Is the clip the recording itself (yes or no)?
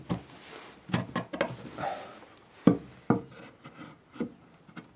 yes